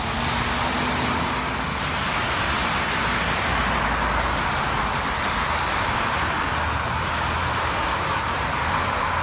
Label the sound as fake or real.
real